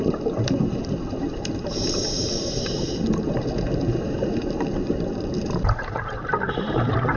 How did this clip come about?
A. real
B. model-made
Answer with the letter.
B